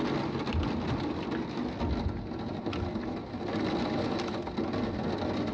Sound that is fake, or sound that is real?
real